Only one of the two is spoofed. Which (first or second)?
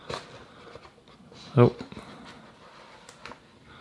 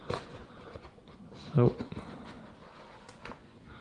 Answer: second